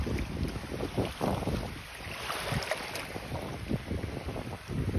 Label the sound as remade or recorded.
remade